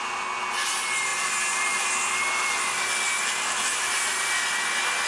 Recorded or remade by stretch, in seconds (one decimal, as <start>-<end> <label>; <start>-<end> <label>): 0.0-5.1 recorded